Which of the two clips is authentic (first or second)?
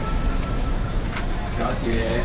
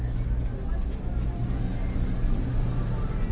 second